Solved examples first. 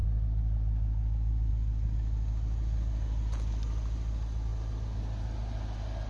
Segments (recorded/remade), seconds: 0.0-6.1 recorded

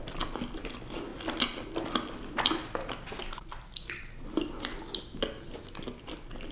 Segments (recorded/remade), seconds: 0.0-6.5 recorded

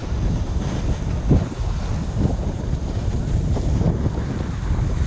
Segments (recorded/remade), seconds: 0.0-5.1 recorded